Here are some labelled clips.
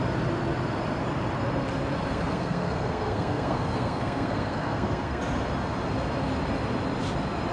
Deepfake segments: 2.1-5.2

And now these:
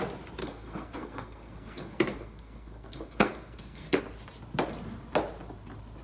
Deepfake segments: 0.4-4.0

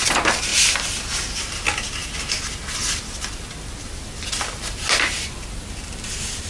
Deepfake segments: none

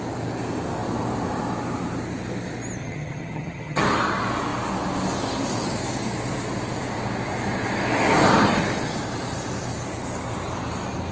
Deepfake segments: 2.8-3.8

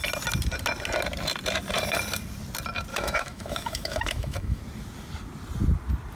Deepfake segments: 2.9-4.6

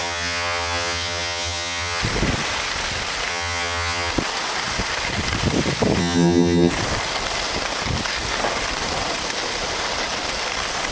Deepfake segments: 0.0-2.0; 3.3-4.1; 6.0-6.7

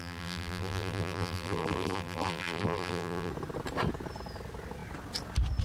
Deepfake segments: 0.0-3.3

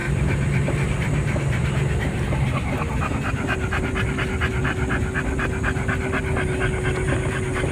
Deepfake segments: 0.0-2.2